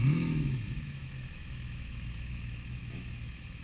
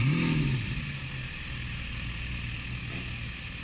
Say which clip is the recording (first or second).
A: second